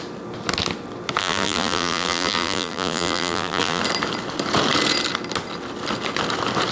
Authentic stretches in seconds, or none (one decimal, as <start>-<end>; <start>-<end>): 0.0-1.2; 3.8-6.7